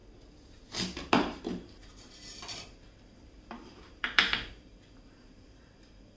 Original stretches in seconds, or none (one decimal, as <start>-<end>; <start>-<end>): 0.0-1.1